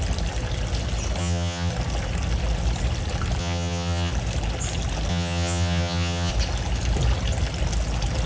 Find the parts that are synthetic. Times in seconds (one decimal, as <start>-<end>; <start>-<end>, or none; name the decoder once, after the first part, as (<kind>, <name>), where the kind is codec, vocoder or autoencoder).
1.2-1.7 (vocoder, HiFi-GAN); 3.4-4.1; 5.1-6.3